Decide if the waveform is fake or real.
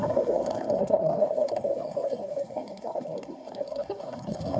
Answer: fake